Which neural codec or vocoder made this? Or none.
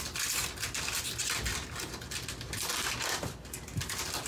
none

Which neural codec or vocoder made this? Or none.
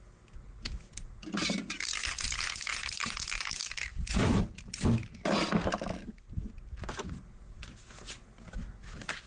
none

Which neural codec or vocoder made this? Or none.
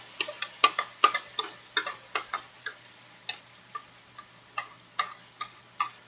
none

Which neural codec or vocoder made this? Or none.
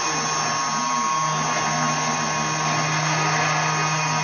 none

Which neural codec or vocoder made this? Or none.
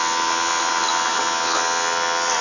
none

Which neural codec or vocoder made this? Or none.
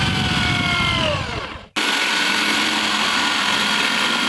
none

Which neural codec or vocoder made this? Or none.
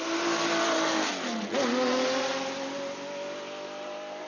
none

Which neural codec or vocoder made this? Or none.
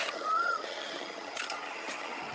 vocoder, HiFi-GAN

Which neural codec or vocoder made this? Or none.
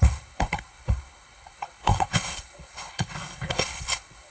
codec, HILCodec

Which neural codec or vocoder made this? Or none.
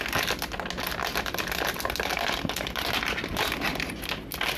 none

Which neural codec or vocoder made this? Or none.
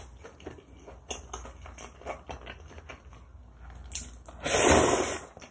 none